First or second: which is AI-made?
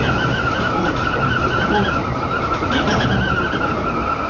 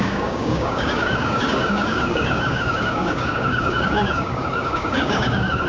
second